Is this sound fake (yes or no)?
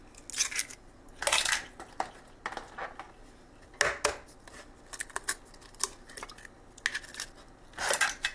no